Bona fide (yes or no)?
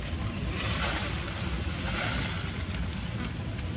yes